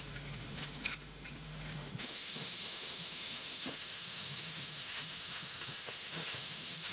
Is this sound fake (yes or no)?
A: yes